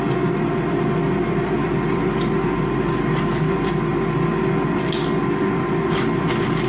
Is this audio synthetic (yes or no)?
no